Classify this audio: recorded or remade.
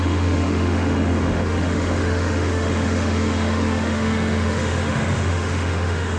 remade